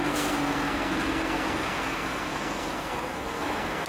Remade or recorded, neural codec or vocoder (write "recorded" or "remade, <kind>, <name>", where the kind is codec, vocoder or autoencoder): remade, codec, SNAC